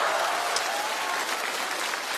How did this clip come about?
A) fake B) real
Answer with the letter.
B